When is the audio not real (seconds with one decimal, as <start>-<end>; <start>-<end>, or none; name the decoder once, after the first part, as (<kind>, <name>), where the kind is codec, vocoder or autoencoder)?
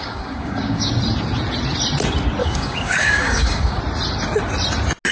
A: 0.0-0.9 (codec, DAC); 2.4-3.8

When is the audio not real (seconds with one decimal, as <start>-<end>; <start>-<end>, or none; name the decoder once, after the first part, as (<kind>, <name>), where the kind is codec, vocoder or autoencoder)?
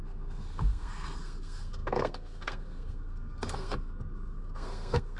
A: 0.0-5.2 (codec, SNAC)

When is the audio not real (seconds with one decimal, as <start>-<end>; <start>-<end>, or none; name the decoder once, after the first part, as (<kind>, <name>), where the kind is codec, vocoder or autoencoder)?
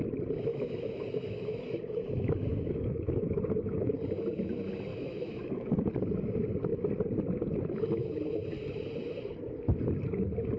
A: 0.5-1.6 (autoencoder, DAC-VAE); 2.5-3.9; 4.9-5.9